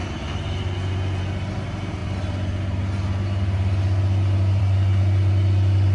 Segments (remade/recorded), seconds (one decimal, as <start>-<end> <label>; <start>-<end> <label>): 0.0-5.9 recorded